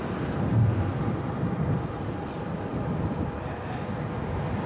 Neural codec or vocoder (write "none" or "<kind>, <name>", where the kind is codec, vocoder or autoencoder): none